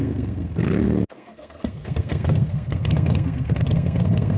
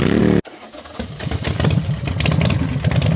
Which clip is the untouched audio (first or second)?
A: second